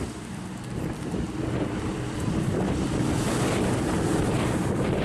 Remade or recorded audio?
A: remade